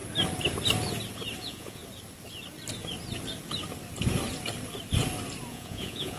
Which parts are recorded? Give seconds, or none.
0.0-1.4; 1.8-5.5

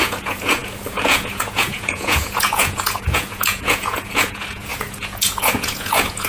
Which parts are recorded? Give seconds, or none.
none

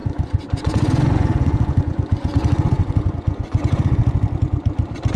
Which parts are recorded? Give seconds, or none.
4.0-5.2

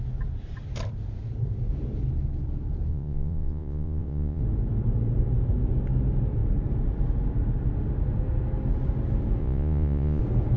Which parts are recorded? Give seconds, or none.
0.0-2.9; 4.4-9.4; 10.2-10.6

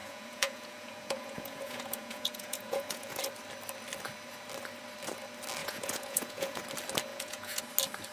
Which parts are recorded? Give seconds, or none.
3.2-5.6; 6.6-7.1; 7.6-8.1

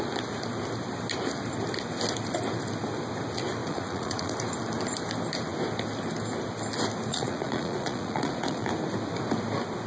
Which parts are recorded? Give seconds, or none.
0.0-3.6; 4.3-7.1; 8.7-9.9

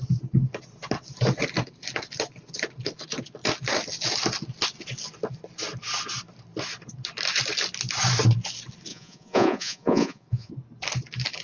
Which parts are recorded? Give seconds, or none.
0.0-8.9; 10.5-11.4